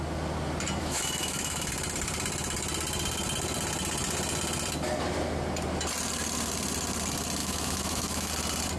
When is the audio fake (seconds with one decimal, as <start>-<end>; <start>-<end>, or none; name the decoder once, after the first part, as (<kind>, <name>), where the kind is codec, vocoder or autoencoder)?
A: 0.8-1.7 (autoencoder, DAC-VAE); 7.4-8.3